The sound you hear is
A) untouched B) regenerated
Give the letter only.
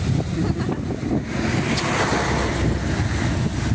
A